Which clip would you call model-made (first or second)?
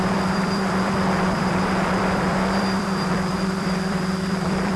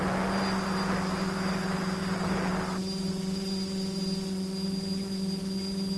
first